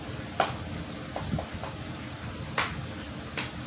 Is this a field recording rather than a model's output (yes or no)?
yes